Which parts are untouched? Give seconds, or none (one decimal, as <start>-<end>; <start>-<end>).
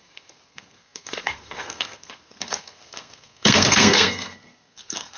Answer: none